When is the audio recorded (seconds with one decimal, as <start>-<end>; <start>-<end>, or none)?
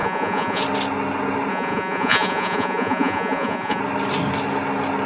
0.6-1.5; 3.8-5.1